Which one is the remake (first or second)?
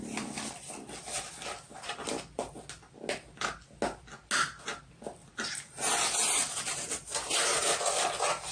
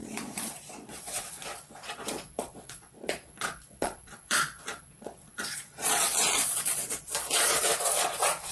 second